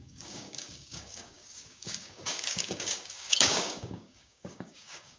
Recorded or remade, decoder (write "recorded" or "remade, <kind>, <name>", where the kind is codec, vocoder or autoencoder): remade, codec, DAC